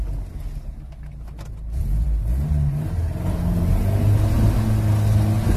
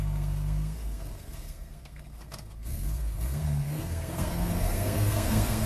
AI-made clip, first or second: second